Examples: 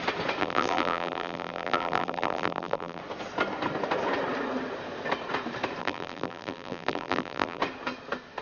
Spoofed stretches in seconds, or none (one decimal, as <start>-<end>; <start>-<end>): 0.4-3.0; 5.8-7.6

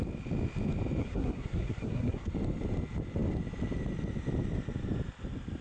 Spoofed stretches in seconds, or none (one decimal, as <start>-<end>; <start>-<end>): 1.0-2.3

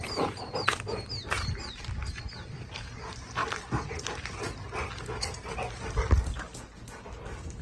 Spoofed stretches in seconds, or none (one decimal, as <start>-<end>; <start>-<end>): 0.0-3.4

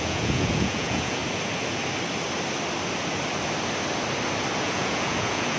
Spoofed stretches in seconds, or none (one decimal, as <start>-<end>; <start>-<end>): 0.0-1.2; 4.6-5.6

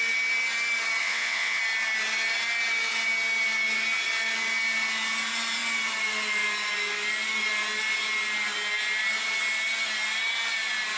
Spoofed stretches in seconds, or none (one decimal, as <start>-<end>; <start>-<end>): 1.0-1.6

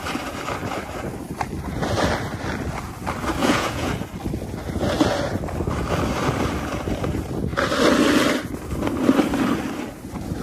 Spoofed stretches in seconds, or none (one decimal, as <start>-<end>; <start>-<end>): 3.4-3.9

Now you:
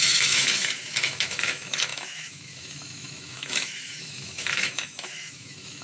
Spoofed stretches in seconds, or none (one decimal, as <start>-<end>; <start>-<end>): 0.0-5.8

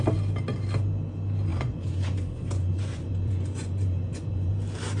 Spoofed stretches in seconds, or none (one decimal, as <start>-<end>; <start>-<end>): 1.5-4.5